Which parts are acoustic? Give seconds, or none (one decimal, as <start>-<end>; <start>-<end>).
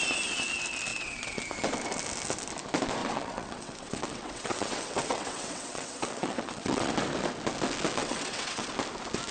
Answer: 0.0-0.9; 1.4-3.0; 6.9-8.0; 8.7-9.3